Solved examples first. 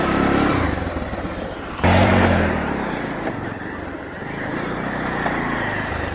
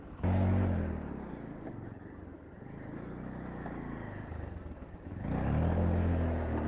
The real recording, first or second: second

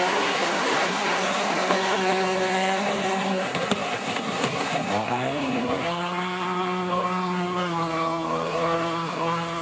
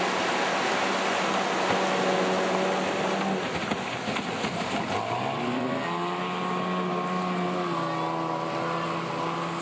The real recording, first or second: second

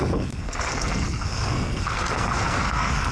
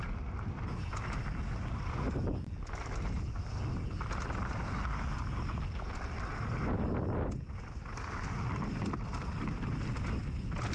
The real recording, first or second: second